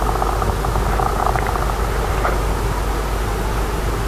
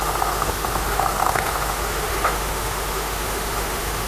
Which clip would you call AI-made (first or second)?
second